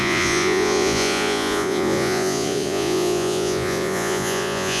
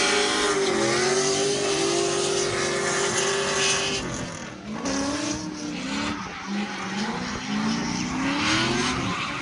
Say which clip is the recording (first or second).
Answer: second